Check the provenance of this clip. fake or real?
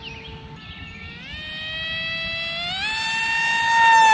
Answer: real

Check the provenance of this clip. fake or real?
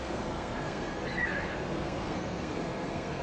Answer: fake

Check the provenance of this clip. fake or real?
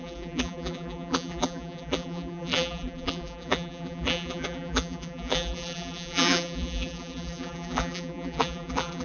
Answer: fake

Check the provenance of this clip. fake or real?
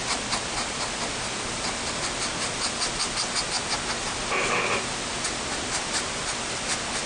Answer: real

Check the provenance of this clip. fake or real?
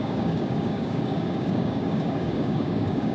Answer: fake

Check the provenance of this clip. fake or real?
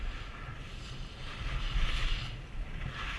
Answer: real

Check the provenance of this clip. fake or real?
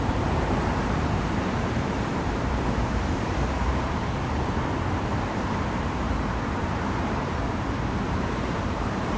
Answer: fake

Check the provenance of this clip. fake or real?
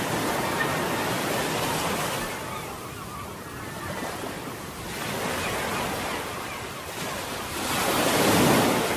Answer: real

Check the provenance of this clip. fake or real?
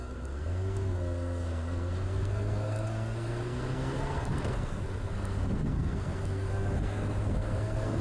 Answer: fake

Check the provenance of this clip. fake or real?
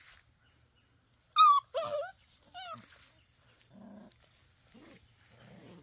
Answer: real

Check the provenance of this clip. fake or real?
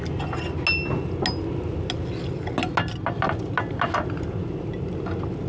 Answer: real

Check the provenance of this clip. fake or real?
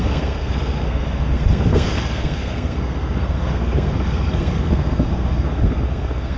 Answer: fake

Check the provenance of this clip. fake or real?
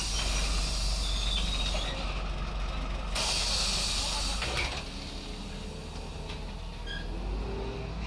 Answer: real